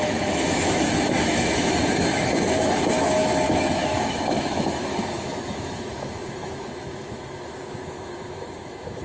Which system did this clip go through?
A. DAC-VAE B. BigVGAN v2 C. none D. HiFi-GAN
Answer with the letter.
A